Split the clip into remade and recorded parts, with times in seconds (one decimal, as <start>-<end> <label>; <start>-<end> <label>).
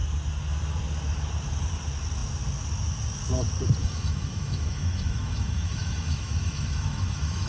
0.0-3.8 recorded; 3.8-7.5 remade